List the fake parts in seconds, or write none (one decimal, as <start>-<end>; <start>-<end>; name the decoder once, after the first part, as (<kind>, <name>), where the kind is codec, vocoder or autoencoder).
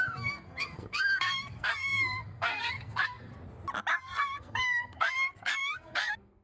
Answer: 0.0-3.3 (codec, SNAC); 4.0-6.4